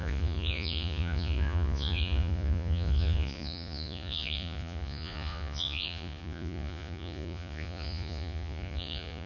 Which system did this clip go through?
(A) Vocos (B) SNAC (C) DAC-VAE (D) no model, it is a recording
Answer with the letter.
A